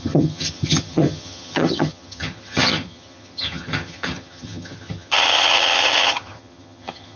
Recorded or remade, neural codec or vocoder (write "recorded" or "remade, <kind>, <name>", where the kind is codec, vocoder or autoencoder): remade, vocoder, HiFi-GAN